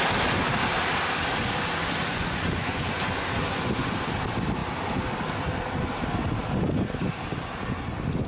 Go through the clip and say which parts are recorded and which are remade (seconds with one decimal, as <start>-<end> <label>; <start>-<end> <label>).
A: 0.0-2.1 recorded; 2.1-3.9 remade; 3.9-8.3 recorded